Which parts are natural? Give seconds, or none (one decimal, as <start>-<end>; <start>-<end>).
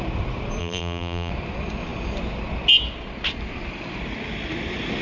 0.0-0.6; 1.3-5.0